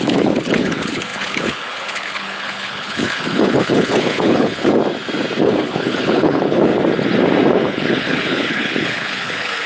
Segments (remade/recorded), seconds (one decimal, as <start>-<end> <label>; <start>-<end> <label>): 0.0-4.8 remade; 4.8-5.4 recorded; 5.4-6.7 remade; 6.7-7.5 recorded; 7.5-9.7 remade